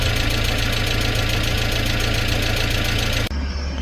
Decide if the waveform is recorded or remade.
recorded